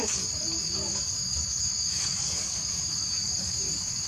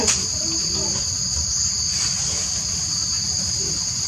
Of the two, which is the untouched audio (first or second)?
second